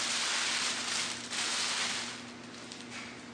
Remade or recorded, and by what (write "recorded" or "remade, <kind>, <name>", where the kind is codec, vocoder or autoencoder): recorded